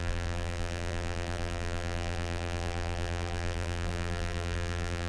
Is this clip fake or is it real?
fake